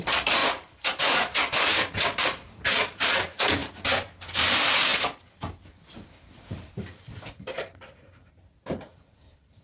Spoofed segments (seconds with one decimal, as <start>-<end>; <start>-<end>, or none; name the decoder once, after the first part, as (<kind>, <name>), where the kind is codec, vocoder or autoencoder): 0.0-1.7 (vocoder, BigVGAN v2); 2.2-4.9; 6.4-9.6